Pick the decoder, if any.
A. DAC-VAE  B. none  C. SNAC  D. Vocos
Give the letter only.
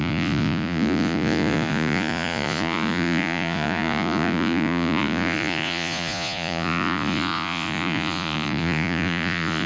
D